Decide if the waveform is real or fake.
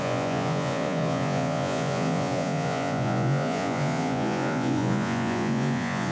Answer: fake